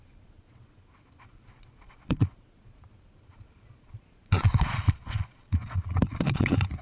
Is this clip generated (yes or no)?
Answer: yes